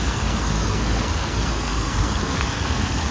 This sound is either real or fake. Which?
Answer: fake